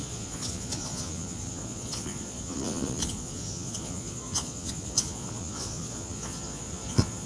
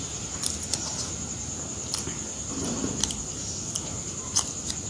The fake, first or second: first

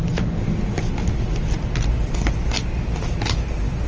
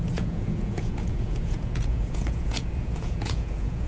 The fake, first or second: second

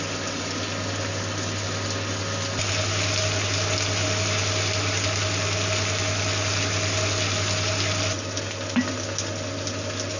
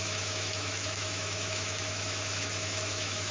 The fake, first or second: second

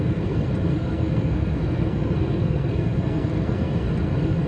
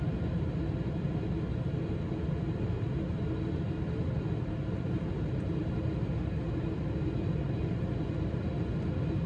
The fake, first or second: first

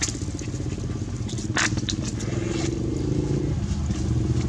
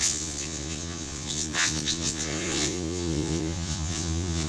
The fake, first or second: second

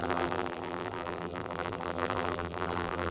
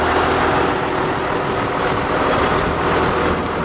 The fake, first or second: first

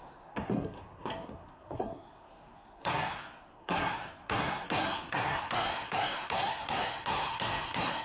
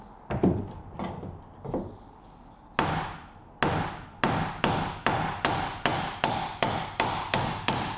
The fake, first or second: first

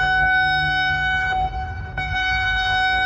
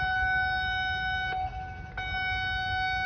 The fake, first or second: first